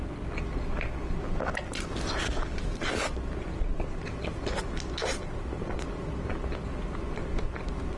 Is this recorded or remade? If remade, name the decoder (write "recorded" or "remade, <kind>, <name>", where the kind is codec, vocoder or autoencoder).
recorded